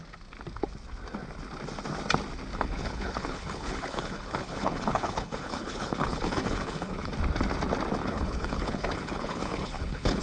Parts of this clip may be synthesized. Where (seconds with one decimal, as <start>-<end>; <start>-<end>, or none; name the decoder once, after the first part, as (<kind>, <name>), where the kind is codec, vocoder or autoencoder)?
2.5-7.1 (codec, HILCodec); 8.0-10.2